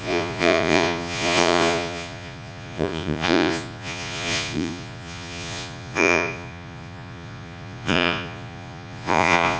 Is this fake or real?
fake